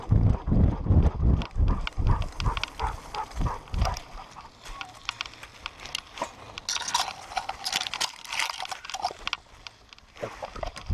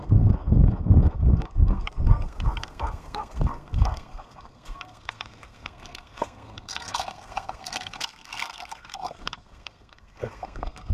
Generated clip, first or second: second